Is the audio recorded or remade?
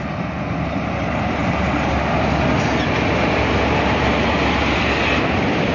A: recorded